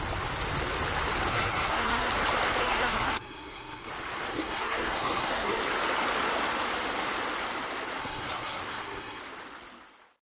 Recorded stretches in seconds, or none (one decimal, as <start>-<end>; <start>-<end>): 0.0-1.3; 2.1-2.6; 3.9-4.3; 5.6-8.0; 9.2-10.3